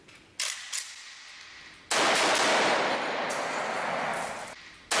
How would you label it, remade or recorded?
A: recorded